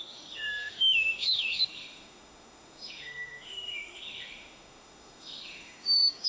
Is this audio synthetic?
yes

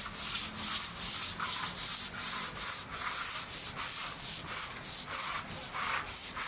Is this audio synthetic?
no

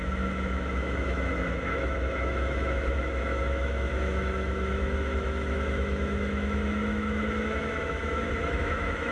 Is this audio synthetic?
yes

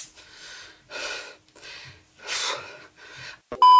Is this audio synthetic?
no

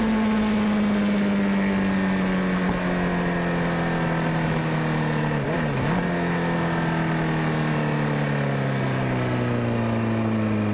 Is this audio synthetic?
no